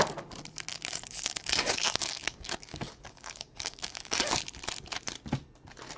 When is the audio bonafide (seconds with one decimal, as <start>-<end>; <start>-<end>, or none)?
0.0-0.7; 4.3-6.0